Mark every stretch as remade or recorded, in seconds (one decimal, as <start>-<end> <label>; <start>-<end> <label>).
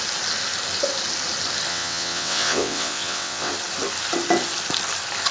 0.0-1.7 recorded; 1.7-3.5 remade; 3.5-5.3 recorded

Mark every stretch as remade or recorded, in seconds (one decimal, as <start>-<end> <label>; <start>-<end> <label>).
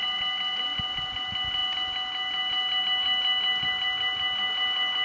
0.0-5.0 recorded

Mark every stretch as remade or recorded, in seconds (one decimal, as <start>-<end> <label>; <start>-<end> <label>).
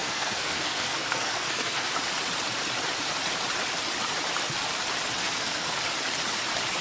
0.0-1.9 remade; 1.9-5.2 recorded; 5.2-5.8 remade; 5.8-6.8 recorded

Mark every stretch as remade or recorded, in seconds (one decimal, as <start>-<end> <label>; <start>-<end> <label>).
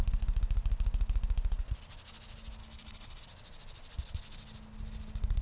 0.0-2.6 recorded; 2.6-3.2 remade; 3.2-5.4 recorded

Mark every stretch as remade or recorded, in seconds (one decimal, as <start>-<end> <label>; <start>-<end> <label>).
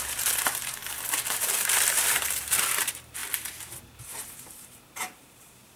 0.0-0.8 remade; 0.8-1.3 recorded; 1.3-3.2 remade; 3.2-4.0 recorded; 4.0-5.8 remade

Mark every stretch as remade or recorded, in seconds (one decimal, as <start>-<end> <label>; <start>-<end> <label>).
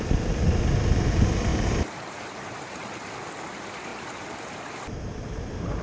0.0-1.5 recorded; 1.5-2.9 remade; 2.9-3.9 recorded; 3.9-4.4 remade; 4.4-5.8 recorded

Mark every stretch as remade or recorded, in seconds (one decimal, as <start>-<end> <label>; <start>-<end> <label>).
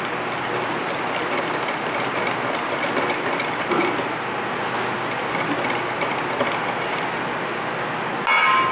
0.0-8.7 recorded